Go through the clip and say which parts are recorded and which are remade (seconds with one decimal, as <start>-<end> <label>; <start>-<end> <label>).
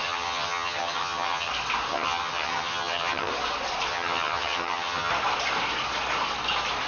0.0-1.5 remade; 1.5-1.9 recorded; 1.9-3.3 remade; 3.3-3.9 recorded; 3.9-5.1 remade; 5.1-6.9 recorded